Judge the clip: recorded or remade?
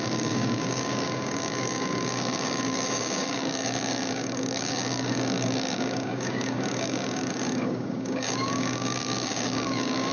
remade